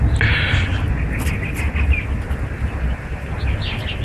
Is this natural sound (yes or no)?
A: yes